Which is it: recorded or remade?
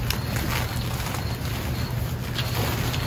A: recorded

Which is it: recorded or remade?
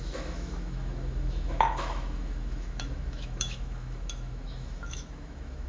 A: remade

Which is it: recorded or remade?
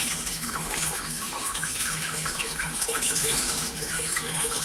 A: remade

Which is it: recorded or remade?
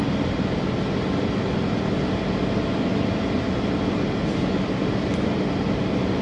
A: recorded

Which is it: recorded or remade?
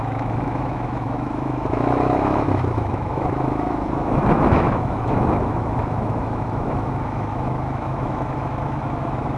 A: remade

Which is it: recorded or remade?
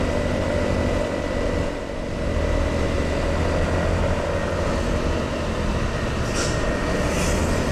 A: recorded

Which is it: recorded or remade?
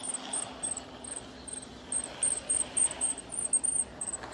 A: recorded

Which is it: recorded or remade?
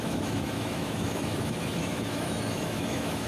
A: remade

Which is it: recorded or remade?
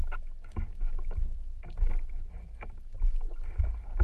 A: recorded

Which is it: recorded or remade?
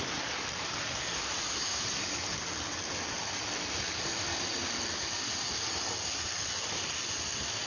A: recorded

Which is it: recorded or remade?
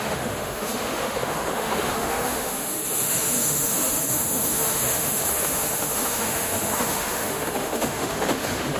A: remade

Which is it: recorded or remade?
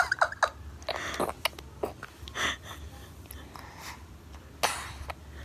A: recorded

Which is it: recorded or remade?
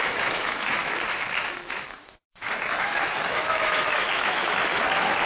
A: remade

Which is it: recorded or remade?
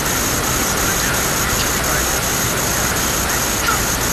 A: recorded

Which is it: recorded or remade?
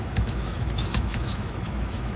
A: remade